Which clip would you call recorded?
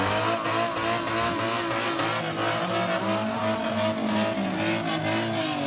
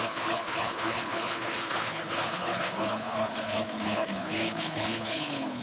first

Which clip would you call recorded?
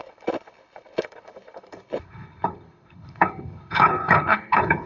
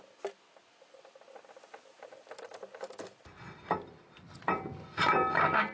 second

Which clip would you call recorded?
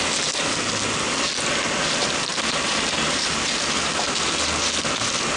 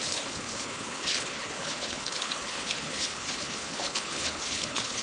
first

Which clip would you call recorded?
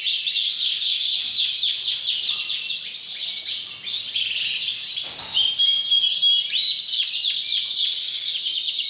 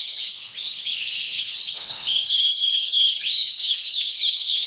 first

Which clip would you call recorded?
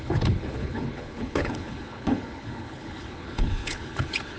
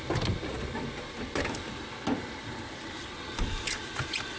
second